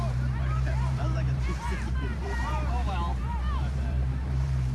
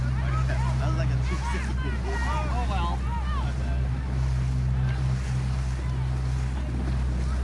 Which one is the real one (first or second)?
second